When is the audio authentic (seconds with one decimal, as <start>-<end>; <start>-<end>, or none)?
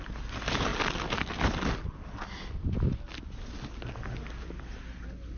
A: 0.0-5.4